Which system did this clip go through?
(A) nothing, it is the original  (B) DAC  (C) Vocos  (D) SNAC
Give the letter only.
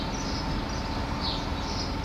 A